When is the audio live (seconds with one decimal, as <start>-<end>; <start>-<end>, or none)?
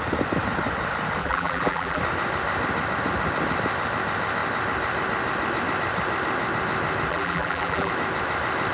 0.0-1.2; 2.0-7.1; 7.9-8.7